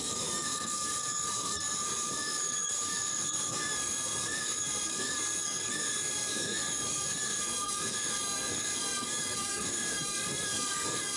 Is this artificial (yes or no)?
yes